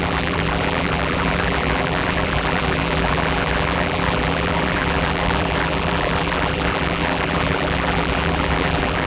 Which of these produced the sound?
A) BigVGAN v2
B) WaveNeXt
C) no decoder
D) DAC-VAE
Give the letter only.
A